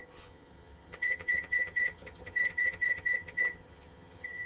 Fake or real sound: fake